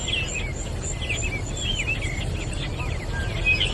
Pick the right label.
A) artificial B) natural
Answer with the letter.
B